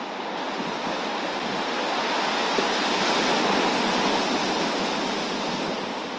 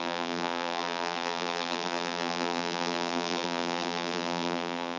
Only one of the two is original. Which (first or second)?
first